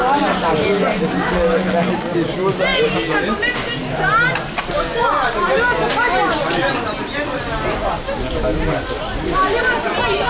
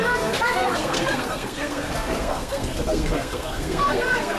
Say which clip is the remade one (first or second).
second